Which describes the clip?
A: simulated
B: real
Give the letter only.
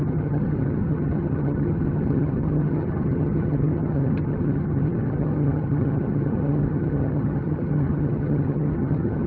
A